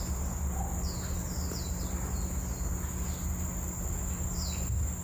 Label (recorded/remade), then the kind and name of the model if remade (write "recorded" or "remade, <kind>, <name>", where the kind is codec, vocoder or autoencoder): recorded